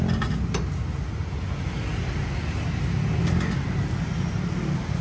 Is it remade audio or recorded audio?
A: recorded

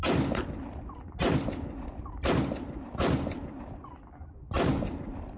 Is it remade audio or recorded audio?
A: recorded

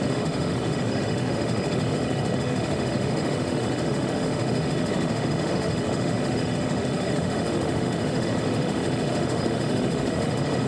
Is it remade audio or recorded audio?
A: remade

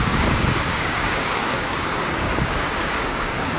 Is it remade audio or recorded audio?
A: remade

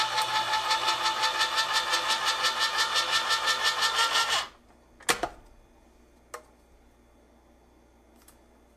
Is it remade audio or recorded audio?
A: recorded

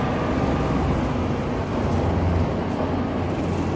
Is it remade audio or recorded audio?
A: recorded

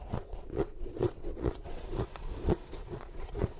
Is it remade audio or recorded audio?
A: remade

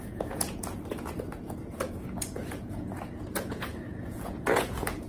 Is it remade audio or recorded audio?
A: remade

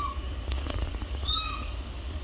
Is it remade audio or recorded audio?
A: remade